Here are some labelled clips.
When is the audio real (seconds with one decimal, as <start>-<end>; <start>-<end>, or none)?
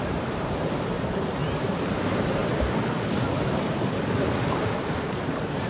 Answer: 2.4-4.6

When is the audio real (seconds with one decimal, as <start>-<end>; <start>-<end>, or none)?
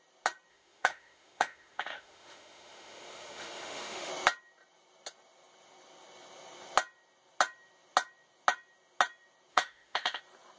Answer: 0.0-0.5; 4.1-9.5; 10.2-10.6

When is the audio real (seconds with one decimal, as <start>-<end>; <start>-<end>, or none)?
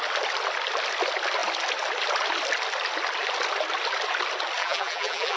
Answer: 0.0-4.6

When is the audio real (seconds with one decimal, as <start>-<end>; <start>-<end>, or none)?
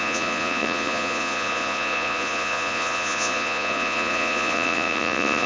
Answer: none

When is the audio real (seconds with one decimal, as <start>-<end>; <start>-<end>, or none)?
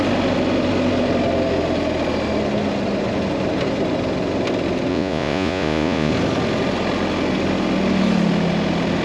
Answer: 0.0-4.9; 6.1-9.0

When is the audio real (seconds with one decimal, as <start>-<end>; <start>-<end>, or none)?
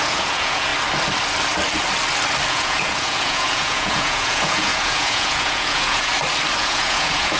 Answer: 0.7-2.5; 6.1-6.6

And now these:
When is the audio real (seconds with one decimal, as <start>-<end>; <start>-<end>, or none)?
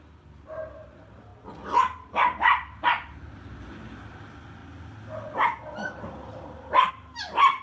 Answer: 0.0-7.6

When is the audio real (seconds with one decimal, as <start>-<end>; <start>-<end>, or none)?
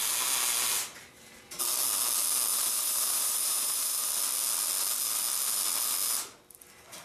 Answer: 0.0-2.5; 4.1-7.0